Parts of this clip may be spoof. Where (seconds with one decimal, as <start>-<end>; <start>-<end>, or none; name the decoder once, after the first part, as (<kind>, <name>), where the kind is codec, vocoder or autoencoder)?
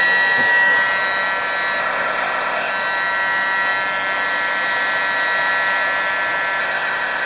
1.8-2.7 (codec, ZipCodec); 6.6-7.3